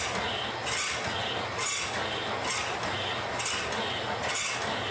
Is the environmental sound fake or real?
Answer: real